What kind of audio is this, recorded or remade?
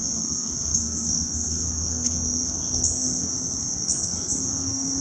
remade